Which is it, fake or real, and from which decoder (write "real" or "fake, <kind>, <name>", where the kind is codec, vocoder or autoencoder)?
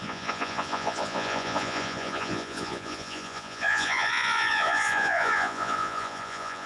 fake, vocoder, Vocos